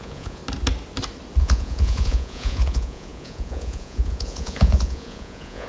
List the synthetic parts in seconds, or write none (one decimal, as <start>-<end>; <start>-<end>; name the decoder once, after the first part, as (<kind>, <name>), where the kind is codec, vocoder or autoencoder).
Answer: 0.0-0.4 (vocoder, Vocos); 1.4-5.7